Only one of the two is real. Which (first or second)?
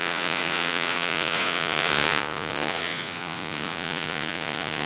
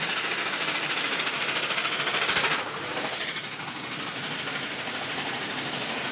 second